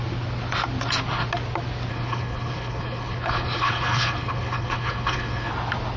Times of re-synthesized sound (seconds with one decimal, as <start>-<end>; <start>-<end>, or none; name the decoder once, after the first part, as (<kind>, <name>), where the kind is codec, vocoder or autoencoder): 1.9-5.5 (codec, HILCodec)